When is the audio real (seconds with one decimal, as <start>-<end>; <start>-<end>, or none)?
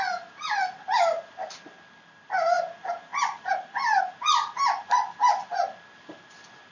0.0-6.7